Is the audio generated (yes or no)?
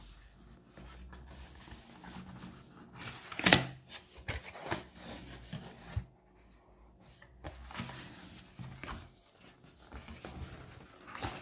no